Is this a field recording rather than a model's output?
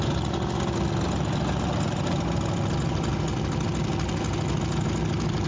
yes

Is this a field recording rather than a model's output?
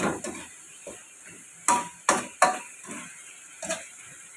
yes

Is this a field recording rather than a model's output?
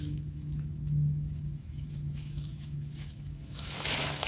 no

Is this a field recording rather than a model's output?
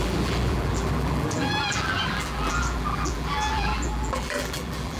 no